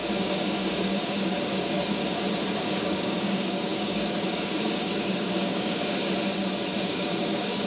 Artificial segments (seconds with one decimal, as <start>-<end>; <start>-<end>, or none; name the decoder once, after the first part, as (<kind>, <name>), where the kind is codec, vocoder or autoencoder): 0.0-2.0 (codec, DAC); 2.5-6.0; 6.8-7.7